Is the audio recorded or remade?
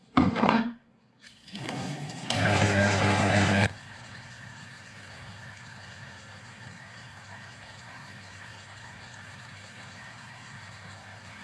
remade